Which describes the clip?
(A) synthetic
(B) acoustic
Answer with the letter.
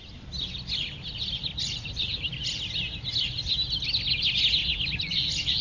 B